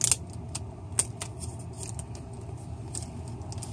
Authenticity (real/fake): real